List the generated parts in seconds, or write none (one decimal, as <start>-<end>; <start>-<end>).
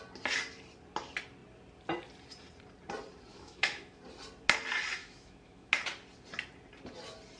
3.3-4.0; 5.0-5.7